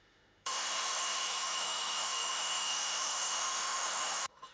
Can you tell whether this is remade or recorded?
remade